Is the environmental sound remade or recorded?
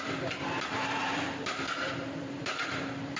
remade